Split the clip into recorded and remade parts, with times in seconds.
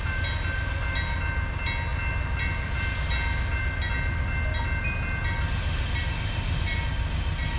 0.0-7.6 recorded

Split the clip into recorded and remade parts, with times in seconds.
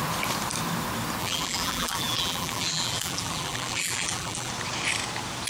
0.0-1.2 recorded; 1.2-4.5 remade; 4.5-5.5 recorded